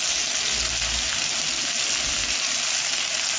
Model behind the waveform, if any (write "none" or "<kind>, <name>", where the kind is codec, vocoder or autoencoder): none